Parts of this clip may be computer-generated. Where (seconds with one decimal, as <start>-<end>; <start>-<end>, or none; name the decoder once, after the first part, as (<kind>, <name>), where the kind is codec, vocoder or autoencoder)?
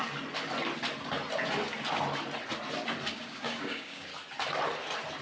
3.1-4.1 (codec, DAC)